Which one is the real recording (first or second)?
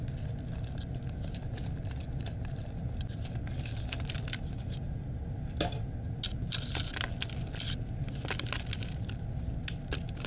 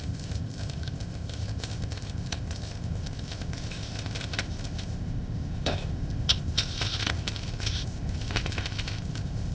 first